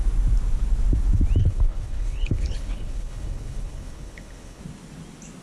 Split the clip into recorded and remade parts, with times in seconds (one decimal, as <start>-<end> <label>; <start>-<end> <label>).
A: 0.0-1.4 recorded; 1.4-4.6 remade; 4.6-5.4 recorded